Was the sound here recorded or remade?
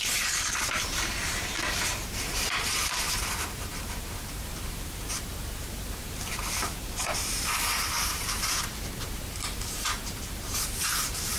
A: remade